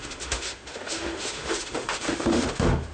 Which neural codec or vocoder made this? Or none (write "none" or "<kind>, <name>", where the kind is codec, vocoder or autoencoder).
autoencoder, DAC-VAE